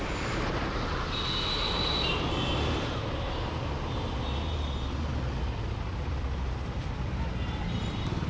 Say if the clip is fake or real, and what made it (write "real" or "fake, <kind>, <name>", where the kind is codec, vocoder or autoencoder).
real